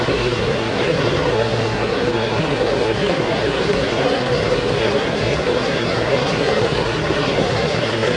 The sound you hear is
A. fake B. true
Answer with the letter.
A